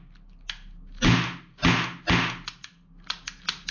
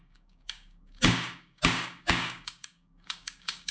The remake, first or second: second